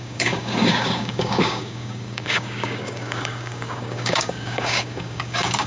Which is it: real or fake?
fake